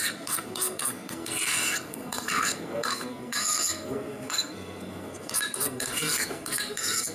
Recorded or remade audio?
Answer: remade